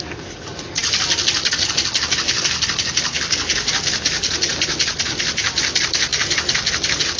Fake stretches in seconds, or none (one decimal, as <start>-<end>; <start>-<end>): none